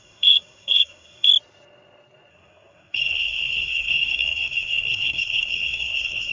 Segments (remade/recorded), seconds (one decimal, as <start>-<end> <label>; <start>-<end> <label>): 0.0-1.3 remade; 1.3-2.3 recorded; 2.3-6.3 remade